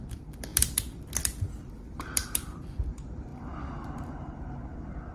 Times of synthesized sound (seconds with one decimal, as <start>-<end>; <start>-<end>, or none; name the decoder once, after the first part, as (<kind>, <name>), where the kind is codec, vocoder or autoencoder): 0.0-3.3 (vocoder, BigVGAN v2)